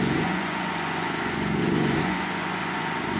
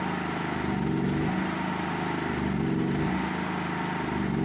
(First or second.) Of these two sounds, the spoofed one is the first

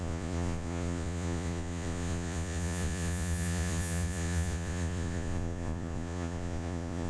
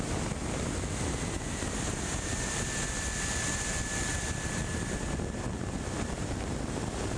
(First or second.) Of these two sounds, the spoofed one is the first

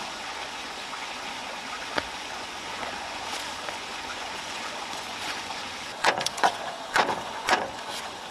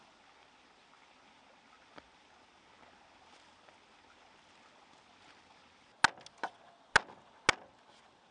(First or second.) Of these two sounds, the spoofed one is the first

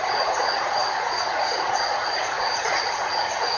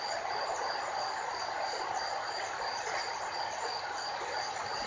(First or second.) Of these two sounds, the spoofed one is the first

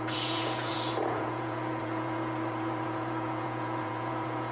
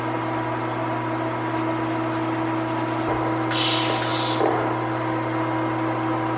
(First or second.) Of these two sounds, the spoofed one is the first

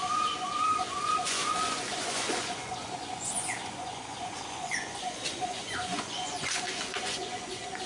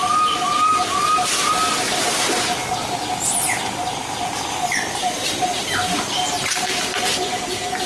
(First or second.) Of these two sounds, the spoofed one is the first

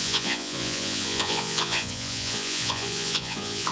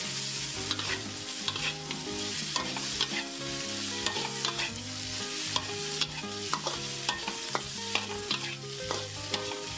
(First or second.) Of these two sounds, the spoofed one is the first